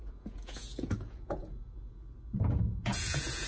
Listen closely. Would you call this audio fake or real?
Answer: fake